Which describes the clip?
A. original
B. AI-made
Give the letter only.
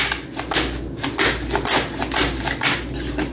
A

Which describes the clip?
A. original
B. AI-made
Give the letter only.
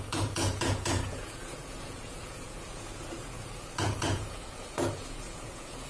B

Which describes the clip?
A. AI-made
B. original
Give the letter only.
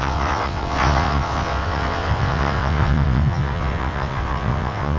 A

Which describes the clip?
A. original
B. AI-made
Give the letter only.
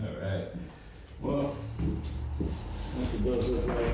A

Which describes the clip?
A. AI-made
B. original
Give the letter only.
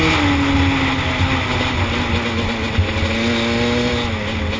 B